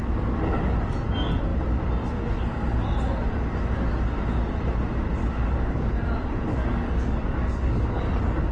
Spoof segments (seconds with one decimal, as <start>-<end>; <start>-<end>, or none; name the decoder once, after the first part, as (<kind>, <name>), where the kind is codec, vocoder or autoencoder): 5.2-5.9 (codec, DAC); 6.5-8.0